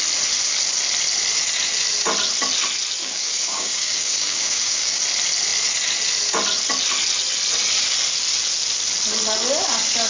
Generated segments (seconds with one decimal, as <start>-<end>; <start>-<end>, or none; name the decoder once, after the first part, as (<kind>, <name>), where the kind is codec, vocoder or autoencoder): 3.0-5.0 (codec, DAC)